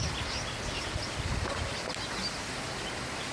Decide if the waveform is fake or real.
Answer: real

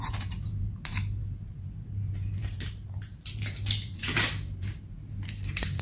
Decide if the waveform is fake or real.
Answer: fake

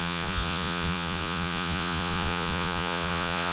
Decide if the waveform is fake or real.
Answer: fake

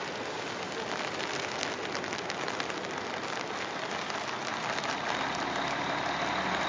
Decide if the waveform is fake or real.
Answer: fake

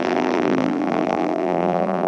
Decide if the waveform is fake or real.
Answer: fake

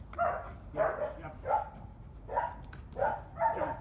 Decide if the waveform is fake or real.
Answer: real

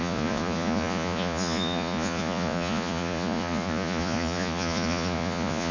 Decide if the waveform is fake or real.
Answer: fake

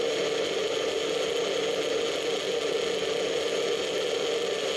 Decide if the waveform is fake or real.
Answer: real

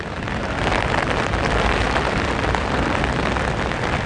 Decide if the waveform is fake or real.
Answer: fake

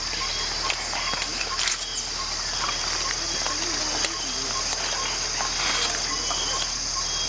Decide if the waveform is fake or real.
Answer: real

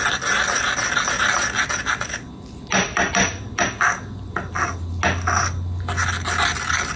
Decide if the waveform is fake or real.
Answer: real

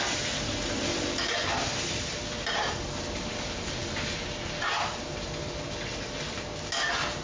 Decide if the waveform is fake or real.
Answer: real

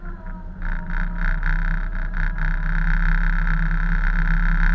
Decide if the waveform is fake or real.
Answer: real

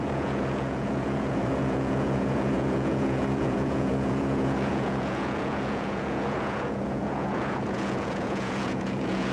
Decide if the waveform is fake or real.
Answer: fake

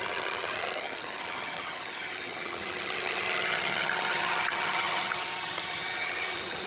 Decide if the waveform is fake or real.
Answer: fake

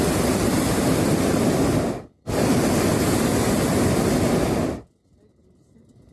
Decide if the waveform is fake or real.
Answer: real